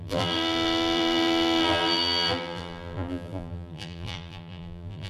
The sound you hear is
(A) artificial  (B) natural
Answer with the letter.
A